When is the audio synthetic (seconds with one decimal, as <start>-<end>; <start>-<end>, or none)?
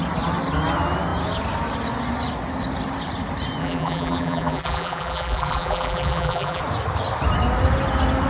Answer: 3.6-6.6